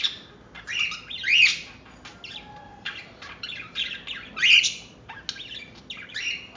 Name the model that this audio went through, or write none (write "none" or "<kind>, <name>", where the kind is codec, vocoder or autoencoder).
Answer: none